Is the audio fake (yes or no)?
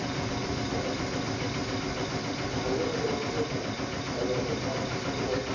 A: no